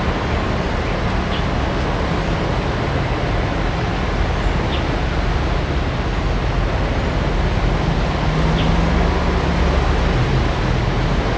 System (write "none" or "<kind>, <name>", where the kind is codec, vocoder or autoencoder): none